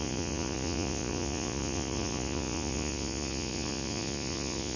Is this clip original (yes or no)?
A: no